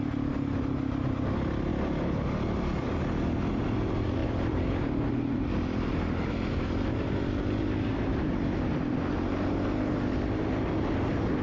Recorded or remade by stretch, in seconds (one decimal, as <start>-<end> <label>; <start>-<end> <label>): 0.0-4.2 recorded; 4.2-8.3 remade; 8.3-11.4 recorded